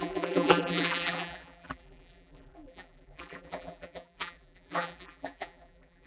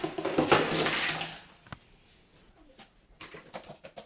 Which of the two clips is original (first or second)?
second